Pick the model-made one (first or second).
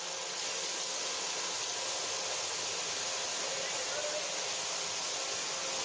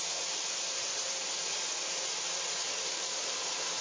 second